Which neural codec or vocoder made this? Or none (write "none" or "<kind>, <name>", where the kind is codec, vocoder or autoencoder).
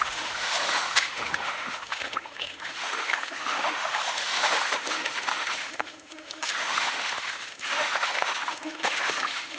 autoencoder, DAC-VAE